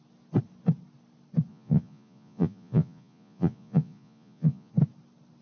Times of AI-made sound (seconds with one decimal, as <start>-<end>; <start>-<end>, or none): 1.5-4.7